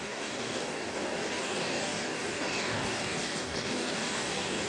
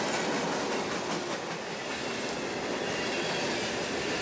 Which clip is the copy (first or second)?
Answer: first